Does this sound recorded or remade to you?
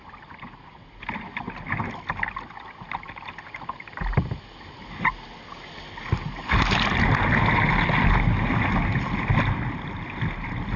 recorded